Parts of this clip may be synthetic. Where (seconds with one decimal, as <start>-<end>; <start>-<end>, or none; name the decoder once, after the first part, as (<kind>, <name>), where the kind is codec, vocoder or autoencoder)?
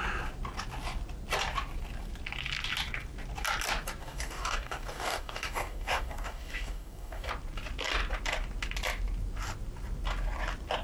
4.0-7.3 (codec, DAC)